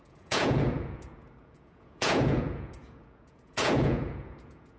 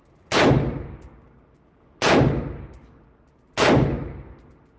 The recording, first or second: second